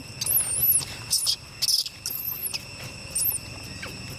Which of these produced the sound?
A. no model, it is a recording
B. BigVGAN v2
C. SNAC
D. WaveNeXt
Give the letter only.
A